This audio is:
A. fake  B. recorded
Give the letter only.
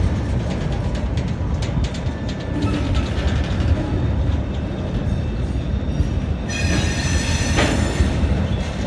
B